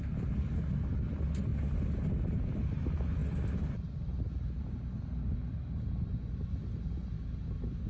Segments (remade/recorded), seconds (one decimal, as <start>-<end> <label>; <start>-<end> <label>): 0.0-7.9 recorded